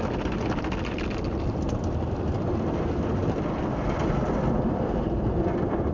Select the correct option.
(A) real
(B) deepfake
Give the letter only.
A